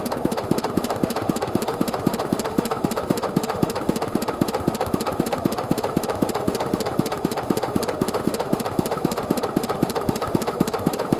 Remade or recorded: remade